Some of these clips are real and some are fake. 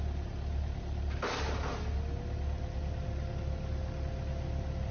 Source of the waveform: real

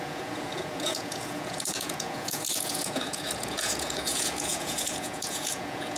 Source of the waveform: fake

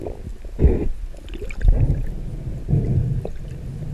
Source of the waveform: real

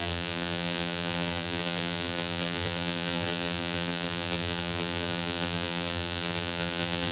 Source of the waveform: fake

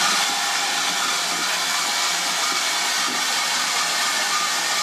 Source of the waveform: real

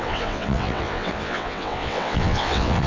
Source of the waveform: fake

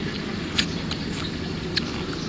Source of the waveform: real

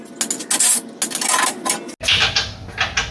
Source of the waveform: real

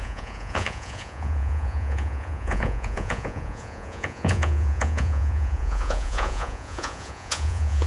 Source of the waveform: fake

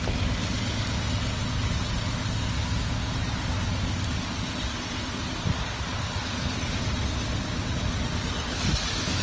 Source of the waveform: real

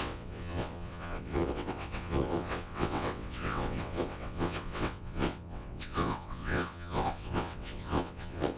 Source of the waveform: fake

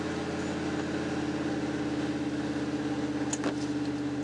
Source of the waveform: real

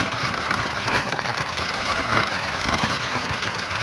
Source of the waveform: fake